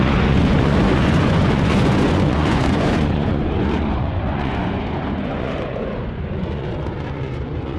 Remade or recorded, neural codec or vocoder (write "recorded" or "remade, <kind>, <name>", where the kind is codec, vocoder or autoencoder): remade, vocoder, Vocos